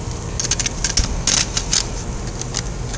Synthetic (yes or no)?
no